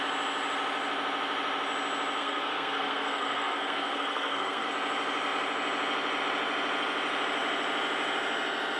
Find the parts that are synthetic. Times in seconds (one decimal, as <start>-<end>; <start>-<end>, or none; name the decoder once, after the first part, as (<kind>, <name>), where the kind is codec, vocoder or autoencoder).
2.2-4.7 (codec, SNAC)